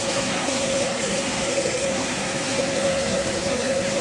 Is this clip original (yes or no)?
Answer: no